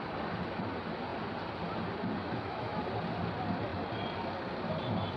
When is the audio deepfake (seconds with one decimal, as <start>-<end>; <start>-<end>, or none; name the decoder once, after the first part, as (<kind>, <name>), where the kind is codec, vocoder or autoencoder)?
2.2-2.8 (autoencoder, DAC-VAE)